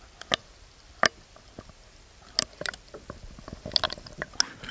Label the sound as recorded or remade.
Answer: recorded